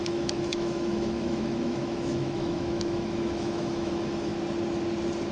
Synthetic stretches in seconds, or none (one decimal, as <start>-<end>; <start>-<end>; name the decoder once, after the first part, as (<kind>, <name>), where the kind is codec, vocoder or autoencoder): 0.0-4.3 (autoencoder, DAC-VAE)